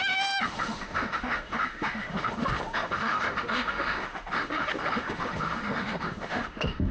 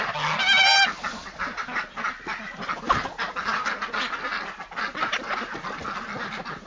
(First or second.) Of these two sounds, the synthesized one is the first